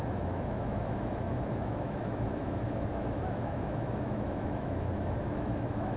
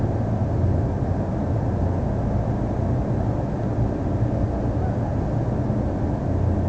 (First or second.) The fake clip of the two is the first